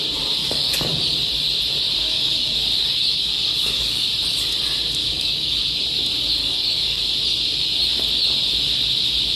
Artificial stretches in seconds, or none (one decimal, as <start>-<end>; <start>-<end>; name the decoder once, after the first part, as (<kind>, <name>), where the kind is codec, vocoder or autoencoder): 0.4-1.0 (codec, DAC); 2.0-4.1; 5.0-5.6; 6.4-7.1